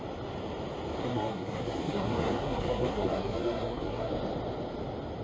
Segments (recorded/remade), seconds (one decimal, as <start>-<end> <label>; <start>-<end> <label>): 0.0-1.0 recorded; 1.0-4.1 remade; 4.1-5.2 recorded